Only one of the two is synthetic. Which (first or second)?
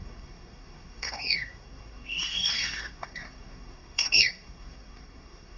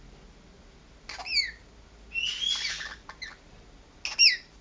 first